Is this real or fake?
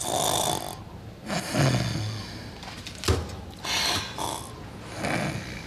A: real